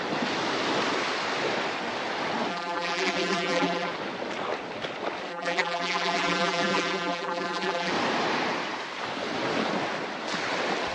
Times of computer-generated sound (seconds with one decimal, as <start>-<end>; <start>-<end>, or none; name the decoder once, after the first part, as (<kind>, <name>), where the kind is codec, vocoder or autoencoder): 2.5-3.9 (vocoder, BigVGAN v2); 5.3-7.9